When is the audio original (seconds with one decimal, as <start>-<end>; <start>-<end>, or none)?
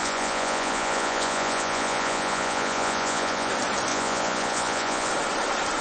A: 3.5-3.9; 5.1-5.8